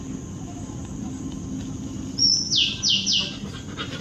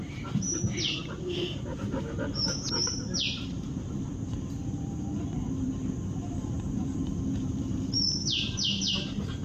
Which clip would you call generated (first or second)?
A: second